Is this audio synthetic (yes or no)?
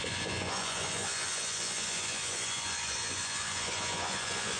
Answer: yes